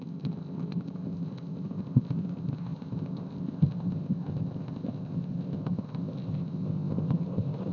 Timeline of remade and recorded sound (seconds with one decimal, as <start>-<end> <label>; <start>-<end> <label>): 0.0-7.7 remade